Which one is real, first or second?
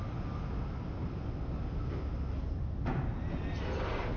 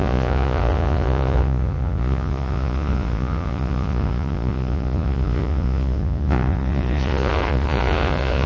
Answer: first